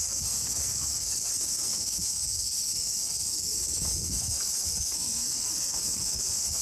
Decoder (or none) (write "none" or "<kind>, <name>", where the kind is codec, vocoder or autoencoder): codec, SNAC